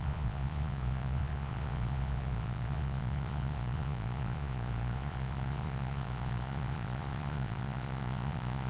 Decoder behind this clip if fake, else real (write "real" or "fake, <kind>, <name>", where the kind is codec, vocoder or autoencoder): fake, vocoder, Vocos